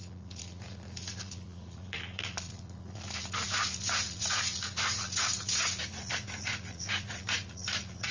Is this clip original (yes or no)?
no